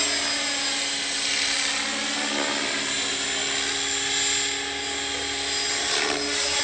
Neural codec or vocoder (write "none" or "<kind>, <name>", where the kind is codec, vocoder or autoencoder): none